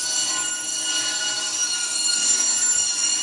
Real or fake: real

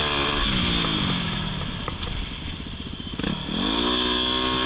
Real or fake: real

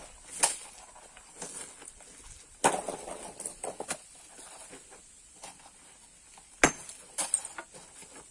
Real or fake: real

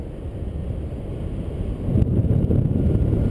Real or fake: real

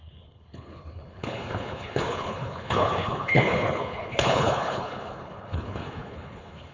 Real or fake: fake